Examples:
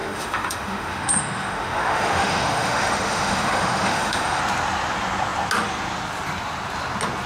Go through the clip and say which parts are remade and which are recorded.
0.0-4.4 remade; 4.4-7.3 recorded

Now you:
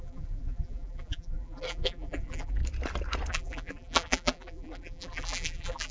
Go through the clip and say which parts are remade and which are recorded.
0.0-2.6 remade; 2.6-3.3 recorded; 3.3-5.9 remade

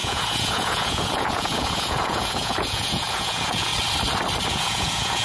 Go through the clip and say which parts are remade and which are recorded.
0.0-3.7 remade; 3.7-4.5 recorded; 4.5-5.2 remade

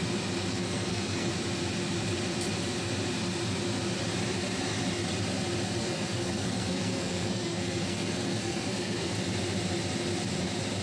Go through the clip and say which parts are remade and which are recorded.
0.0-0.5 recorded; 0.5-1.3 remade; 1.3-5.8 recorded; 5.8-9.1 remade; 9.1-10.8 recorded

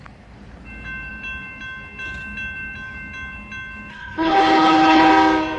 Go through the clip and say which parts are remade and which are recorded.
0.0-3.9 recorded; 3.9-5.1 remade; 5.1-5.6 recorded

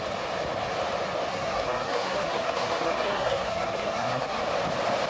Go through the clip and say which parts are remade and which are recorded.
0.0-1.3 recorded; 1.3-4.4 remade; 4.4-5.1 recorded

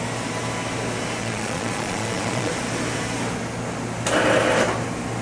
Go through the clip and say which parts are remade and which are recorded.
0.0-1.2 recorded; 1.2-2.5 remade; 2.5-5.2 recorded